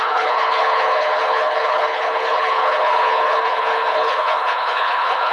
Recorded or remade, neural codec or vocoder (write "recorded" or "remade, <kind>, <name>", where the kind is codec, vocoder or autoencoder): remade, codec, HILCodec